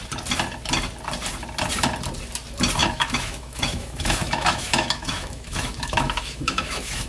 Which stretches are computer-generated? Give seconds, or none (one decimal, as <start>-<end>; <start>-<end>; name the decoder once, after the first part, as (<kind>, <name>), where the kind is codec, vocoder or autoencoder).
2.8-7.1 (autoencoder, DAC-VAE)